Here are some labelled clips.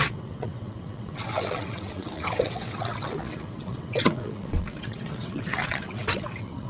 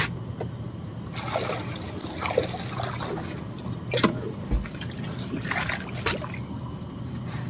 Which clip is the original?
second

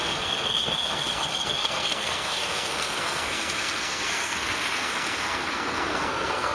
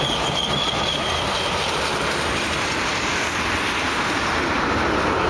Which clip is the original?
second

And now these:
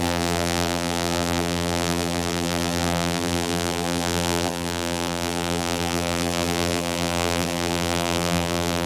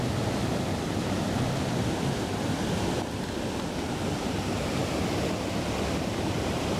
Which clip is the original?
second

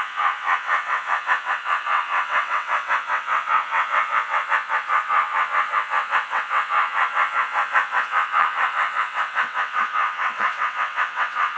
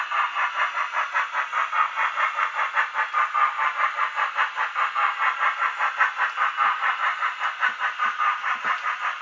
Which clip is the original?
second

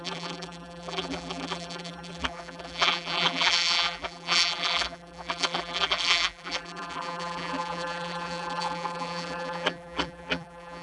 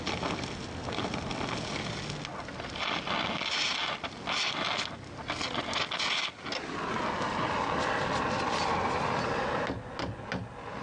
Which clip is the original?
second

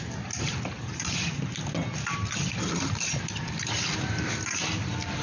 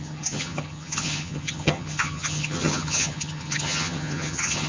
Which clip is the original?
first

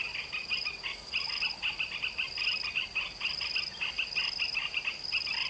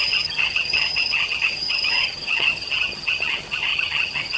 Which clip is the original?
first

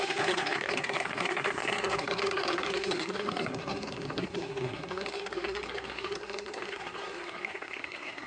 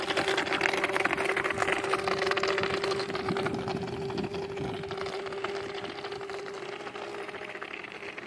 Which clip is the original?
second